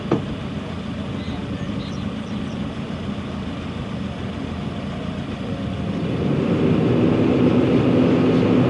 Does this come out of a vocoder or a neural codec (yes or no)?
no